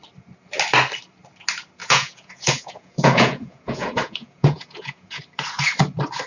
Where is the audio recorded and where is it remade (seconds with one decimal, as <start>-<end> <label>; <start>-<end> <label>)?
0.0-1.8 recorded; 1.8-5.2 remade; 5.2-6.3 recorded